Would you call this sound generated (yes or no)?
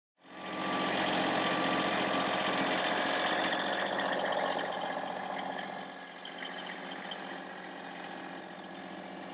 no